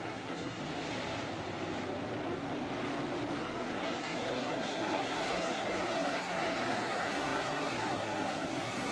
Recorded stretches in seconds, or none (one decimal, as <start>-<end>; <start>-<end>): 0.6-3.4